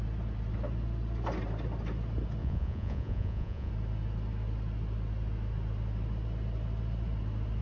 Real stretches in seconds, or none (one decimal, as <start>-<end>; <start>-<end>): 0.0-2.4; 3.7-7.6